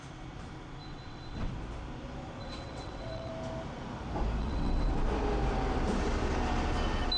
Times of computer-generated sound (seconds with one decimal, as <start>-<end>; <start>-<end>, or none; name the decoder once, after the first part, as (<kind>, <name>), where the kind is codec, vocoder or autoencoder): 0.8-1.5 (vocoder, WaveNeXt); 2.4-3.3; 4.4-4.9